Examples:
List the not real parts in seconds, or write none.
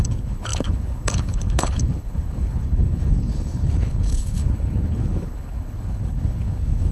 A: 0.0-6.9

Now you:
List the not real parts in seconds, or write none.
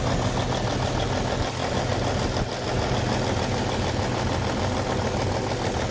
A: none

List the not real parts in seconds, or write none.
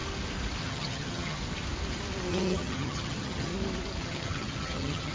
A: 0.6-1.4; 2.3-3.5; 4.0-5.1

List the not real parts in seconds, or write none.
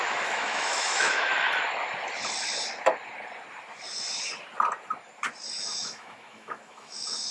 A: 0.0-1.3; 5.6-7.3